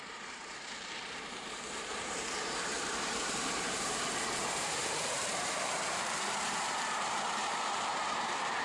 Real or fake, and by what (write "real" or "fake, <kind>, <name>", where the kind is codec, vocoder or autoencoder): fake, vocoder, BigVGAN v2